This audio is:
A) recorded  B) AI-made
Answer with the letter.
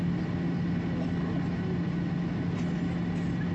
A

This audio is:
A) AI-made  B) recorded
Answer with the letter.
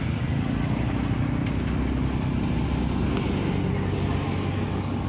B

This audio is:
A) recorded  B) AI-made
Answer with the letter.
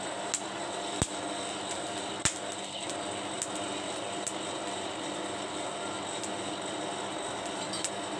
A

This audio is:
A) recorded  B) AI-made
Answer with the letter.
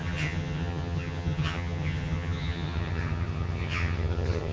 B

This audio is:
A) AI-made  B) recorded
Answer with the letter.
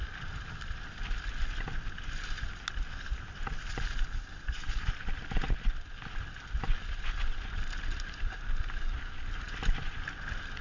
B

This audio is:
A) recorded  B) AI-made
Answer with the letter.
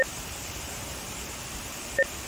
B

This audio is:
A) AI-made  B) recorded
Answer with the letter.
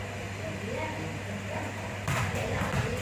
B